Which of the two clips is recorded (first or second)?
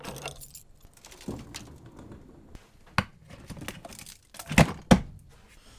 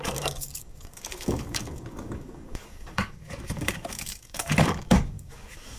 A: first